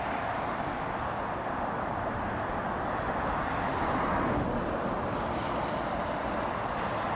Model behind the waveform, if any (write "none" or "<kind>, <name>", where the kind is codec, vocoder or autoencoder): none